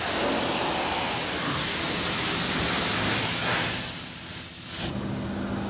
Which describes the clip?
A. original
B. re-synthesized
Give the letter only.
A